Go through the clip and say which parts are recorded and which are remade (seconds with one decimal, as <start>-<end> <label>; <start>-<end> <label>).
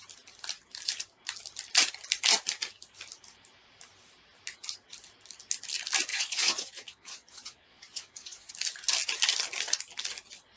0.0-6.1 recorded; 6.1-8.5 remade; 8.5-10.6 recorded